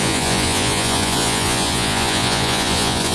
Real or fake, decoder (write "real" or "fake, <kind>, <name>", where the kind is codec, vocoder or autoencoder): fake, vocoder, Vocos